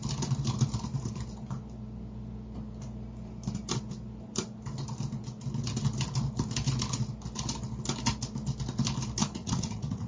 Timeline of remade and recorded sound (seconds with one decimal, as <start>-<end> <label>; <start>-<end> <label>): 0.0-9.2 recorded; 9.2-10.1 remade